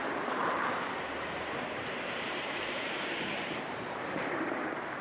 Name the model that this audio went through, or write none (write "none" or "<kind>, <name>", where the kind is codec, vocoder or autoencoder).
vocoder, BigVGAN v2